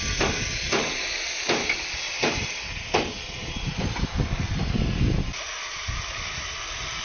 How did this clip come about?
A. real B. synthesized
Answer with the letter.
A